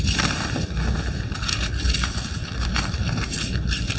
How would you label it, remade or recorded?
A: remade